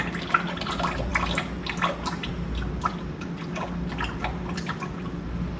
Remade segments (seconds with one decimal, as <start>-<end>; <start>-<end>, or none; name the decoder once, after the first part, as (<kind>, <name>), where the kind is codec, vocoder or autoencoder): none